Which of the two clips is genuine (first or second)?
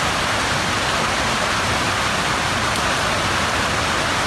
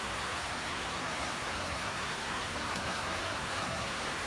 first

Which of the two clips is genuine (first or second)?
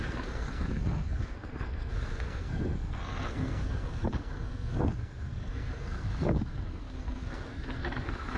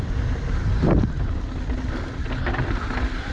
second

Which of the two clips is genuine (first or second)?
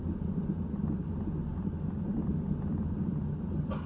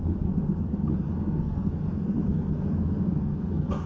first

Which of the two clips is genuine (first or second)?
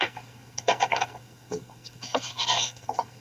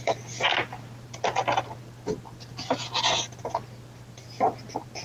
second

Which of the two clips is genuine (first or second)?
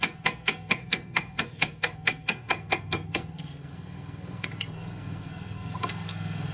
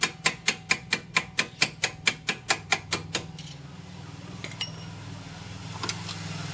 second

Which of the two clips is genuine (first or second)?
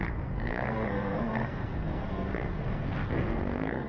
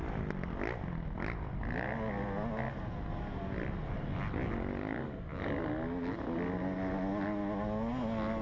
second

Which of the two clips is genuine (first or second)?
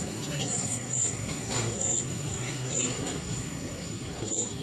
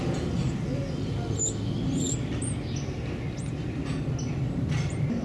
second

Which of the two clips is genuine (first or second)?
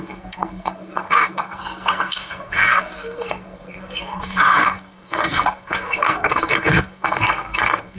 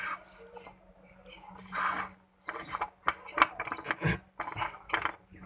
second